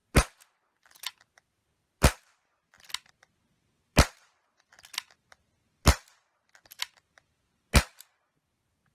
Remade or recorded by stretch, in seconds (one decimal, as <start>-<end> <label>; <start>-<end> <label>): 0.0-8.9 recorded